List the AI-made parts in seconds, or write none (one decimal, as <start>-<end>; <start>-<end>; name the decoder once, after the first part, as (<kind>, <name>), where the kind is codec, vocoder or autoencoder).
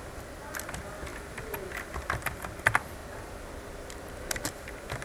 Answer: none